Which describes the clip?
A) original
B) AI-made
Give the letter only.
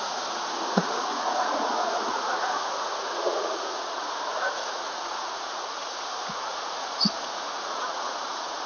B